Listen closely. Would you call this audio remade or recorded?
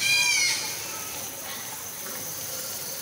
recorded